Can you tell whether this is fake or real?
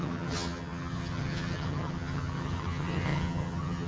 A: fake